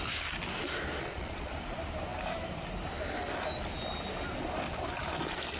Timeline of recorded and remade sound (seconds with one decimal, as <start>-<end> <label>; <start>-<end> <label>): 0.0-1.0 recorded; 1.0-1.5 remade; 1.5-5.6 recorded